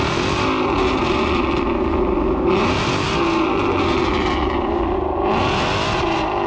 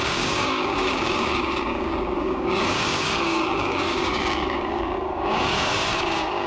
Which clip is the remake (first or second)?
second